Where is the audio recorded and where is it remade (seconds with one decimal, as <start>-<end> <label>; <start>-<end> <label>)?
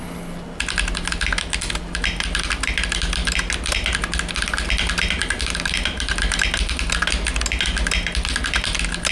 0.0-9.1 recorded